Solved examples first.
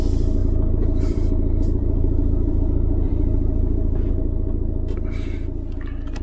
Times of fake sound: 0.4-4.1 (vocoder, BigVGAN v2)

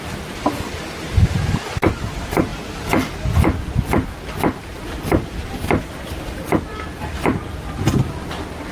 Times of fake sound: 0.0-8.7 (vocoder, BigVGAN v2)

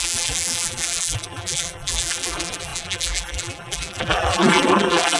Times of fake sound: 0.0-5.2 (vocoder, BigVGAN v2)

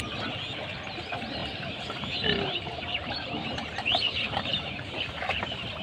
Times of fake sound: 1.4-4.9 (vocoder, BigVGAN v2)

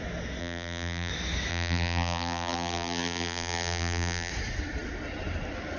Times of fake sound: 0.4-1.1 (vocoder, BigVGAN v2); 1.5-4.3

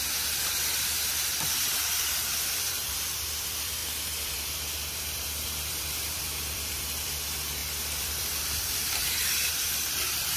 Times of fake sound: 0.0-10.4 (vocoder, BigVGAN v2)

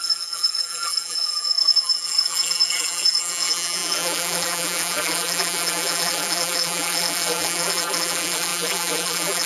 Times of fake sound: 0.0-9.5 (vocoder, BigVGAN v2)

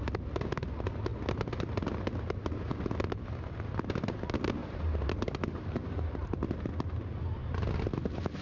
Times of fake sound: 4.6-6.7 (vocoder, BigVGAN v2)